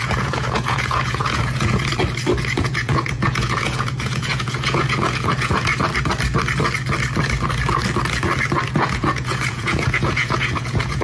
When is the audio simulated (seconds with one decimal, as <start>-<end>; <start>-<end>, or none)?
0.0-1.8; 2.5-5.7; 8.7-11.0